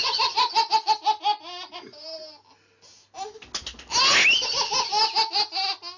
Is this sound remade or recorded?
recorded